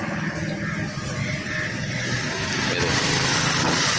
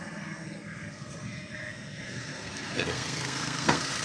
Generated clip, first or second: second